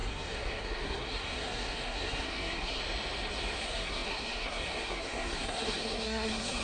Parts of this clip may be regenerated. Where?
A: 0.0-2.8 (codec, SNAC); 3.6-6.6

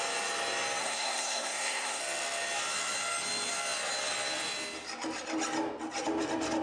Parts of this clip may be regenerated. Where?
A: 0.8-2.0 (codec, SNAC)

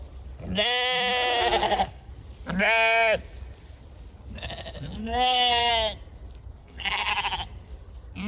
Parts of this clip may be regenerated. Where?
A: 1.6-2.1 (codec, SNAC); 5.0-5.7; 6.6-7.1

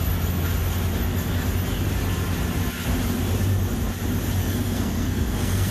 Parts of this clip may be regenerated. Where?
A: 4.4-5.7 (codec, SNAC)

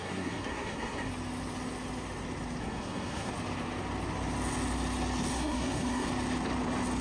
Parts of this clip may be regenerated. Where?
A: 0.0-1.1 (codec, SNAC); 2.6-3.3; 5.3-6.1

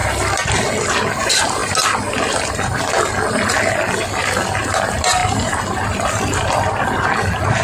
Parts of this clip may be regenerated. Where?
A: none